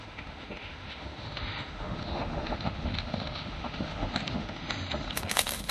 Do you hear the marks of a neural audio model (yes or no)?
yes